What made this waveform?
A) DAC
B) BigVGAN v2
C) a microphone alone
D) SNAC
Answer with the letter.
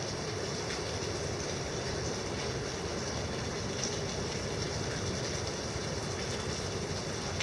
C